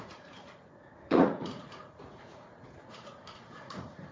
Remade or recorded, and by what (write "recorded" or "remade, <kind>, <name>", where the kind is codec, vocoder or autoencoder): remade, vocoder, Vocos